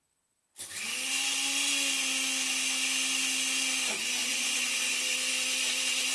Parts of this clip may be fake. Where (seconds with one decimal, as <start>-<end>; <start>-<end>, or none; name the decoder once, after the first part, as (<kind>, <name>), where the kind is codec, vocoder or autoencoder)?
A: 4.2-4.9 (vocoder, Vocos)